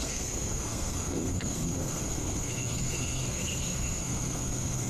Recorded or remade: remade